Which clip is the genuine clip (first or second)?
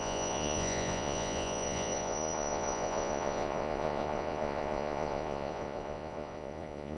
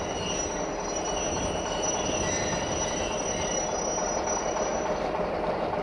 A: second